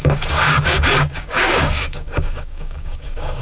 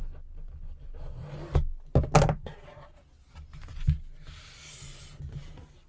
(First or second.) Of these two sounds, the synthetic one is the first